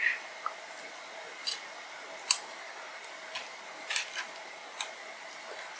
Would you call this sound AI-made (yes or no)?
no